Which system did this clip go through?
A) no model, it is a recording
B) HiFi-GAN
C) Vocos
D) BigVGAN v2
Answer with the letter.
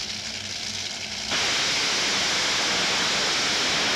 A